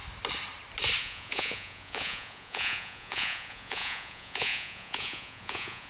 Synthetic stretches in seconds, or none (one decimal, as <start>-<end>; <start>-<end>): 1.0-5.9